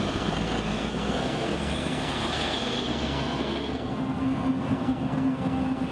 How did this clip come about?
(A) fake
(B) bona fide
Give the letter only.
A